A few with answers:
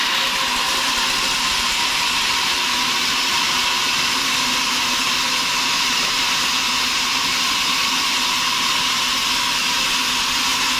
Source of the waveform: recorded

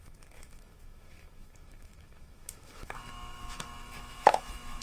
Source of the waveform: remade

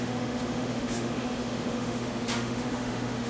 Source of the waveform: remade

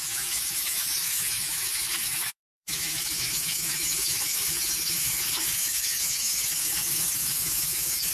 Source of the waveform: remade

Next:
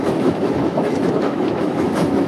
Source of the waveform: remade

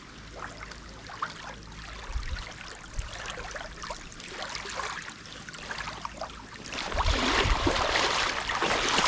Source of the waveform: recorded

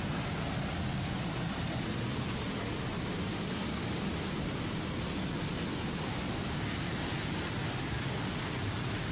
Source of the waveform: recorded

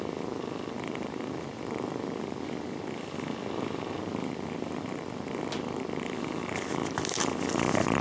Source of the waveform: recorded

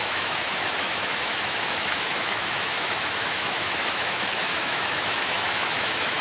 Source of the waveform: remade